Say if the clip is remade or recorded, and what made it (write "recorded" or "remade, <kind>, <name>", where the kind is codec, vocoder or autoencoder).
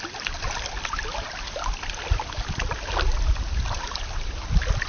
recorded